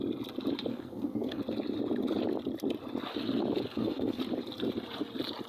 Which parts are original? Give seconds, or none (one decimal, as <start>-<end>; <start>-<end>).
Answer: 0.0-0.7; 1.4-3.7; 4.2-5.5

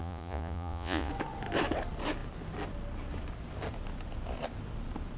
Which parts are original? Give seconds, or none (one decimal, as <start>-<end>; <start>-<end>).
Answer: 1.1-5.2

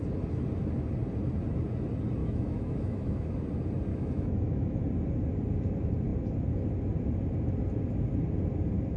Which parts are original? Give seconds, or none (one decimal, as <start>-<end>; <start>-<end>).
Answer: 0.0-2.2; 3.3-3.9; 4.8-9.0

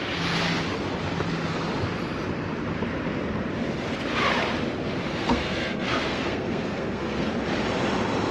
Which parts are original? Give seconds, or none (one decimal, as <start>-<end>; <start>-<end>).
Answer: 0.0-5.1; 7.3-8.3